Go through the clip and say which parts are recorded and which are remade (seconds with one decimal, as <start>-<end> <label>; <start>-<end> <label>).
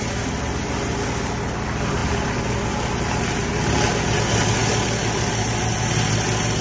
0.0-6.6 recorded